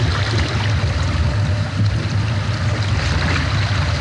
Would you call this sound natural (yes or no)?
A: yes